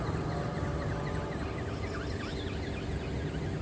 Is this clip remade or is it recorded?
recorded